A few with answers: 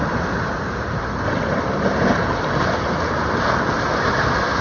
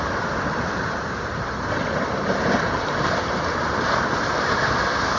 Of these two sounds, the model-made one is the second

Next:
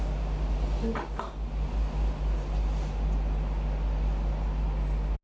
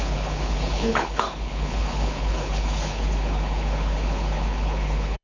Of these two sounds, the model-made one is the second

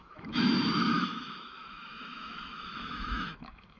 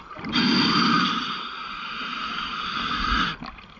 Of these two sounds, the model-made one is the first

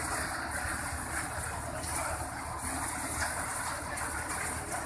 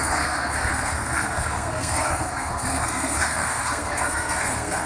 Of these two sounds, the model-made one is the second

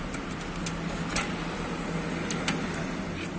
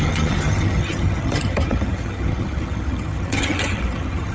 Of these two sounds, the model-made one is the second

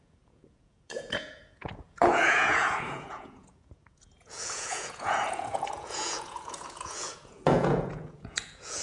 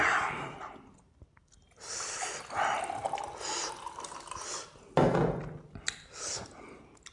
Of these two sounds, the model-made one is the first